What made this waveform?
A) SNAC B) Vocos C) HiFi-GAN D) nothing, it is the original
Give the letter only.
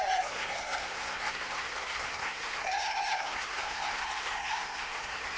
A